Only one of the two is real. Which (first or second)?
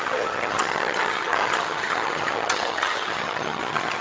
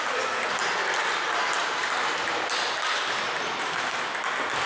second